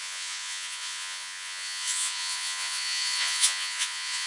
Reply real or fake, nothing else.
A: fake